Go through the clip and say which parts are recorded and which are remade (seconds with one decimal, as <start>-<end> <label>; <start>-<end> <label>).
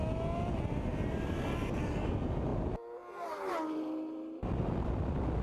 0.0-0.9 recorded; 0.9-2.1 remade; 2.1-5.4 recorded